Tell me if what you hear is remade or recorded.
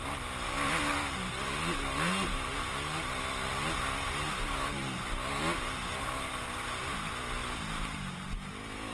recorded